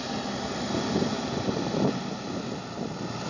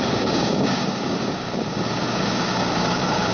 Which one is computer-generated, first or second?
second